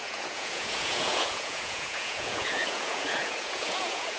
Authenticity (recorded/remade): remade